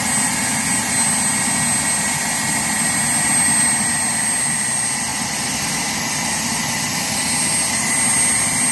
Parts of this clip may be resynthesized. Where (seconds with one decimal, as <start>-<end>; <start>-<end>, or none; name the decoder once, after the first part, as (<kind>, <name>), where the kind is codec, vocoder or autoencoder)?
5.1-5.7 (vocoder, BigVGAN v2)